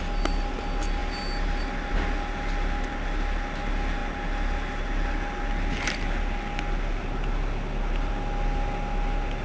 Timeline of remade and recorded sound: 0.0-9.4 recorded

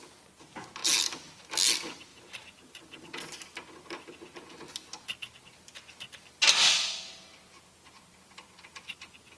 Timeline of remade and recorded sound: 0.0-9.4 recorded

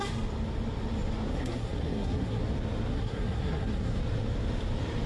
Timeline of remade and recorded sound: 0.0-1.3 recorded; 1.3-2.4 remade; 2.4-2.9 recorded; 2.9-4.0 remade; 4.0-5.1 recorded

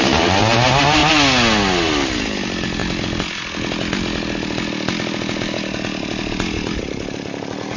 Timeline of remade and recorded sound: 0.0-7.8 recorded